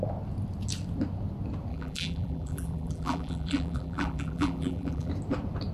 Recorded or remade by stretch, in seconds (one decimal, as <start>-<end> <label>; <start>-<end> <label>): 0.0-1.7 recorded; 1.7-5.1 remade; 5.1-5.7 recorded

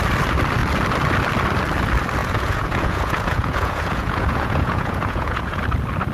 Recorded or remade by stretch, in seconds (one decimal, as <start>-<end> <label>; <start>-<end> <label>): 0.0-2.2 recorded; 2.2-5.6 remade; 5.6-6.1 recorded

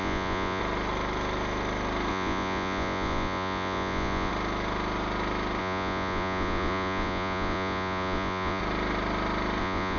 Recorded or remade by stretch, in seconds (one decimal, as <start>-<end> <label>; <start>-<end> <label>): 0.0-0.6 remade; 0.6-2.1 recorded; 2.1-4.3 remade; 4.3-5.6 recorded; 5.6-8.6 remade; 8.6-9.6 recorded; 9.6-10.0 remade

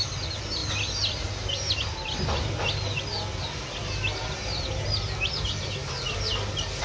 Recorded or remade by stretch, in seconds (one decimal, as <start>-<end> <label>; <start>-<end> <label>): 0.0-6.8 recorded